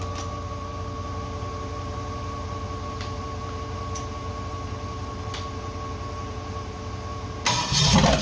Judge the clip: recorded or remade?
recorded